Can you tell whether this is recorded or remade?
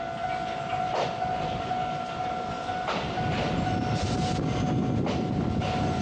recorded